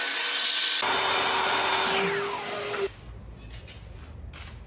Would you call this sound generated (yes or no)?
no